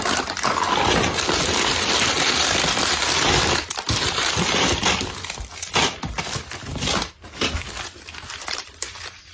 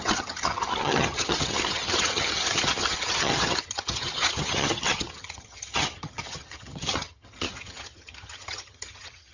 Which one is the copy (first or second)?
second